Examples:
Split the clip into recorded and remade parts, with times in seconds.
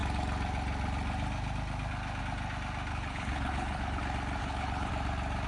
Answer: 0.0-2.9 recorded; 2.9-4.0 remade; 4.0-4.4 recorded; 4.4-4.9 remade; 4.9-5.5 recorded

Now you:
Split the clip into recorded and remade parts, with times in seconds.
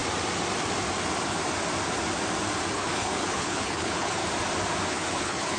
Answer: 0.0-2.7 recorded; 2.7-4.2 remade; 4.2-4.9 recorded; 4.9-5.6 remade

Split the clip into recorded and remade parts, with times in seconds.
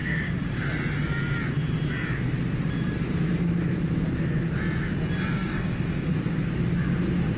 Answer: 0.0-0.7 remade; 0.7-5.3 recorded; 5.3-6.1 remade; 6.1-7.4 recorded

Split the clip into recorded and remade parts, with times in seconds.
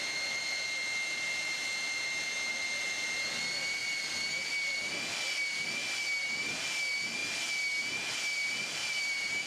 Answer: 0.0-8.8 recorded; 8.8-9.5 remade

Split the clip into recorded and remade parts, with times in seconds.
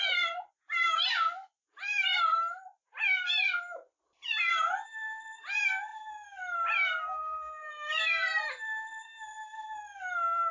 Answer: 0.0-2.3 recorded; 2.3-3.0 remade; 3.0-5.9 recorded; 5.9-7.7 remade; 7.7-10.5 recorded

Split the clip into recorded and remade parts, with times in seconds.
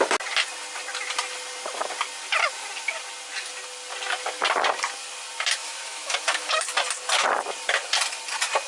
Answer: 0.0-5.6 recorded; 5.6-6.6 remade; 6.6-8.7 recorded